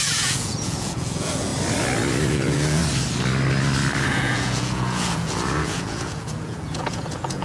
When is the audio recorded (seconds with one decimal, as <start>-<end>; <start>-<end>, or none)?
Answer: 1.5-2.3; 2.8-4.1